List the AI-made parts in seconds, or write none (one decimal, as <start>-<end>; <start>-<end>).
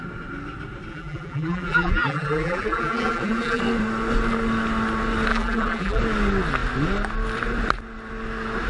0.9-3.6; 5.3-6.0